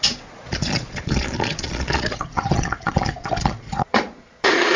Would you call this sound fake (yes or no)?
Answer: yes